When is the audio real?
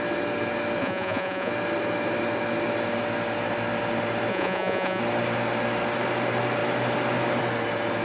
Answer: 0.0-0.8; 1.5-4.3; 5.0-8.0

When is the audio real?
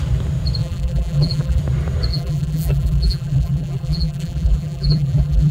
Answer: 0.0-0.6; 1.6-2.1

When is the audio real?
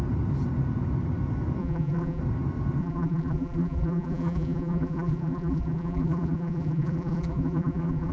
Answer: 0.0-1.6; 2.2-2.8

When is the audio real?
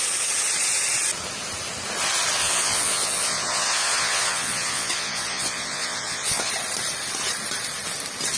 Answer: 0.0-2.4; 6.5-8.4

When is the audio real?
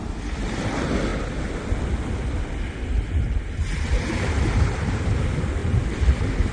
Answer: 0.0-2.9; 5.1-5.6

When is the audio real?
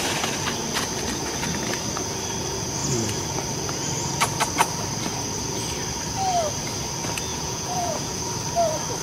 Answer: 0.0-7.3; 8.2-9.0